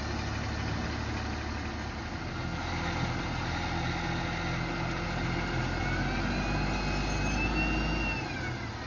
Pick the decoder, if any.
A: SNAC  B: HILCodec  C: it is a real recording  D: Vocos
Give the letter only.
C